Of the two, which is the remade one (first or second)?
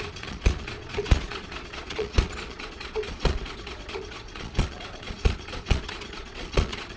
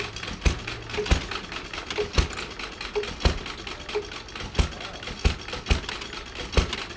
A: first